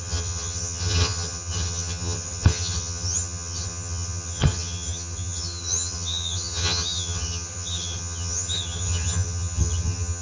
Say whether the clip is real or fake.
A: fake